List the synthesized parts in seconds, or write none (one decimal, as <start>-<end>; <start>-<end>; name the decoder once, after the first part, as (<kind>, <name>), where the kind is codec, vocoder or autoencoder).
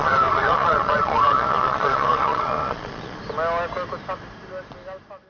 0.0-3.2 (vocoder, Vocos)